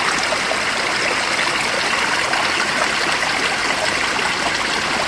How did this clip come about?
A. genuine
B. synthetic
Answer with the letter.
A